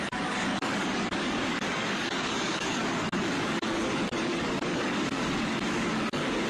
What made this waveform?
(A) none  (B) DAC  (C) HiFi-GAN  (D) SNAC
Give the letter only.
B